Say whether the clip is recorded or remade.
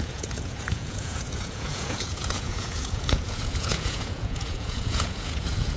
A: remade